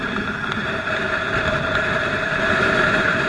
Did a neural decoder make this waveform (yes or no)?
yes